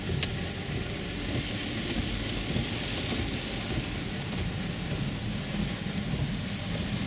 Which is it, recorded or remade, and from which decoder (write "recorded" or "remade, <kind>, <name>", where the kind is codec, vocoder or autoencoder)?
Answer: recorded